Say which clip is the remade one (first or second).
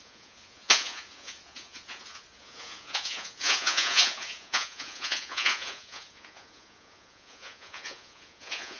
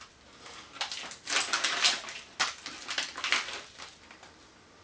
first